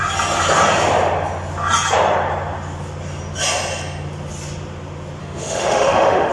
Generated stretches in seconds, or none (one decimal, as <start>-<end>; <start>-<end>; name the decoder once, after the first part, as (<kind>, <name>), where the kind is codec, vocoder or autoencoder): 5.2-6.3 (autoencoder, DAC-VAE)